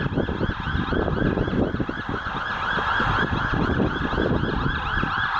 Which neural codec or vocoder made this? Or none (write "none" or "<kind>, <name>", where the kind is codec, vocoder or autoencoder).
none